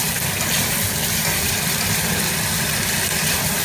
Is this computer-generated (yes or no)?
yes